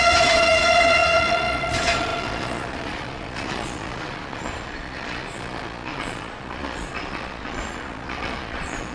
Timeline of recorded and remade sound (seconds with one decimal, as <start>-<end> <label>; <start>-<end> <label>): 0.0-8.9 remade